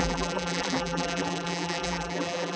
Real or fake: fake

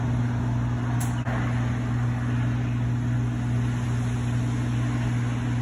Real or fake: real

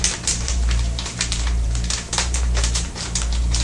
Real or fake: fake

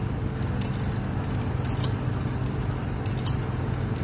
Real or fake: real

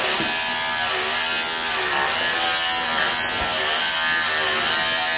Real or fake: real